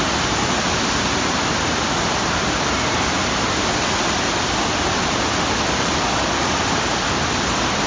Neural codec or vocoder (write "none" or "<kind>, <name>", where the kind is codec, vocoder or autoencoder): none